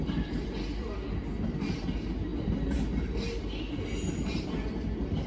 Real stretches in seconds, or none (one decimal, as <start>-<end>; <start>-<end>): 0.0-5.3